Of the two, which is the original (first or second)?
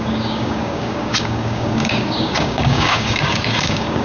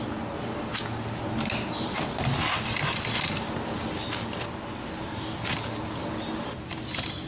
second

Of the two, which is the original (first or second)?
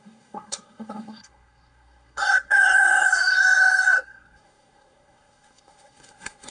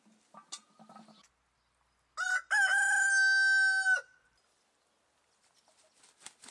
second